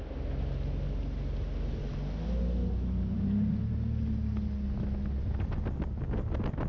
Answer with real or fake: real